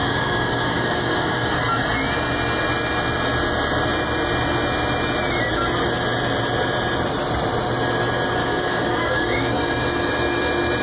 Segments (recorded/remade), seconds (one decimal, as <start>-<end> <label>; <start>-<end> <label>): 0.0-1.5 remade; 1.5-8.4 recorded; 8.4-9.8 remade; 9.8-10.8 recorded